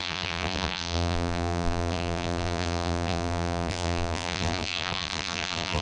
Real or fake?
fake